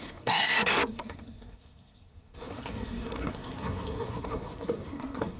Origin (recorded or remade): remade